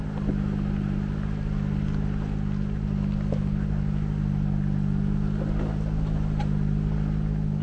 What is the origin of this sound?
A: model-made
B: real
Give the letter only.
B